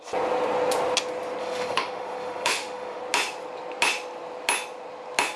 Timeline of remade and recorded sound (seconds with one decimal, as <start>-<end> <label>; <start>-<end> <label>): 0.0-1.4 recorded; 1.4-3.0 remade; 3.0-5.4 recorded